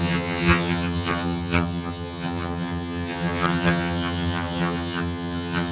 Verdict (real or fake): fake